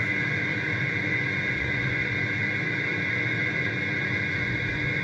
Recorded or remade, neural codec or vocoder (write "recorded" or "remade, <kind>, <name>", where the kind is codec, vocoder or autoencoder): remade, vocoder, Vocos